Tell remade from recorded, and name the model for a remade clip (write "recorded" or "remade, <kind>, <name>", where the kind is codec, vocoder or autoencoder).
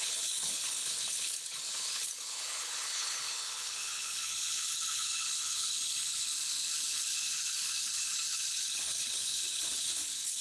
remade, codec, HILCodec